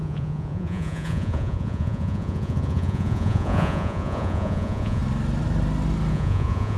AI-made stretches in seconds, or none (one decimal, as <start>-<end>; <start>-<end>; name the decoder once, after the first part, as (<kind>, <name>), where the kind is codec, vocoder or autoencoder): 0.0-5.0 (vocoder, Vocos); 6.1-6.8